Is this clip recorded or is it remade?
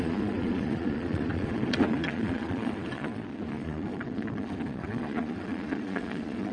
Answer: remade